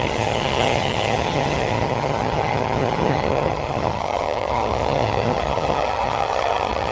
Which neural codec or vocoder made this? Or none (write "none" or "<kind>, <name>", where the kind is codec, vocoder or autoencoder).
vocoder, HiFi-GAN